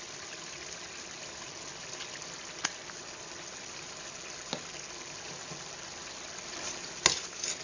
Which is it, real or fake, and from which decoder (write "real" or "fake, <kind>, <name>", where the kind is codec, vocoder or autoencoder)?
real